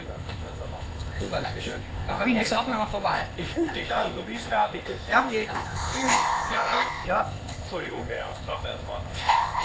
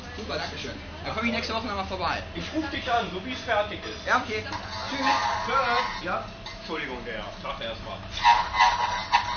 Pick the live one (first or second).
second